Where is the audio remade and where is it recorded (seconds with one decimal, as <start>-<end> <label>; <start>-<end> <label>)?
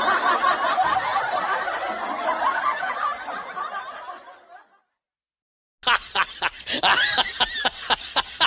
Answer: 0.0-8.5 recorded